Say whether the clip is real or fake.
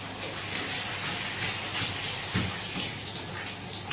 real